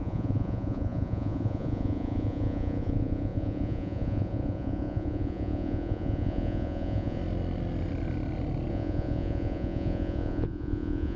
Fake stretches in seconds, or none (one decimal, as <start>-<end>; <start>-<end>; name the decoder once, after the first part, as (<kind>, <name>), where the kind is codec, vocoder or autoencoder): 0.0-7.2 (vocoder, Vocos); 8.7-11.2